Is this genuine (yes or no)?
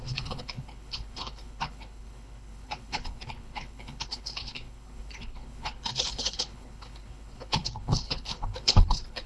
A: no